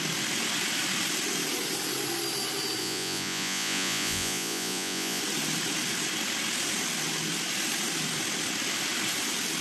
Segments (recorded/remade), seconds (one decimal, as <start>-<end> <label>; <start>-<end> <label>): 0.0-2.8 recorded; 2.8-5.2 remade; 5.2-9.6 recorded